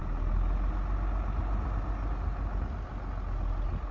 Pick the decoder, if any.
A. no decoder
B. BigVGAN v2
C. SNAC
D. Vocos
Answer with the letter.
A